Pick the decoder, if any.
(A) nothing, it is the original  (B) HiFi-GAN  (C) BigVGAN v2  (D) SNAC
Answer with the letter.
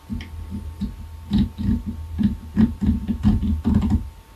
A